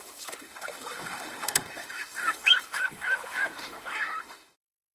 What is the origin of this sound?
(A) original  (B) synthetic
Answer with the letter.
B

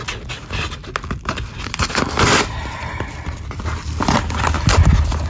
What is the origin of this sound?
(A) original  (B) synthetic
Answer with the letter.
A